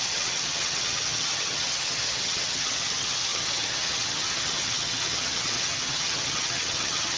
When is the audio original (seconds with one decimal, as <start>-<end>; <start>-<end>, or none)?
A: none